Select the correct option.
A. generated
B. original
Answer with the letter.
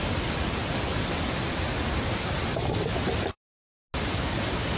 B